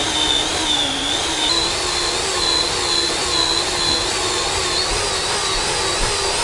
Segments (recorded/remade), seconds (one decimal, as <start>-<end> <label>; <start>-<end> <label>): 0.0-0.5 recorded; 0.5-1.8 remade; 1.8-6.4 recorded